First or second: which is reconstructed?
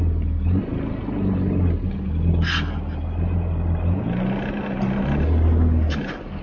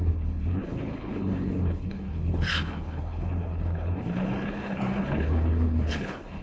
second